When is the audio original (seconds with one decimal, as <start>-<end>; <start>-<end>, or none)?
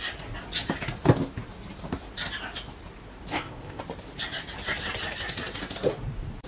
0.0-3.3; 3.8-6.5